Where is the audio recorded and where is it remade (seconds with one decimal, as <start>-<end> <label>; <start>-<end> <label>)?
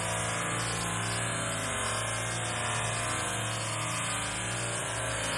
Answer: 0.0-4.8 recorded; 4.8-5.4 remade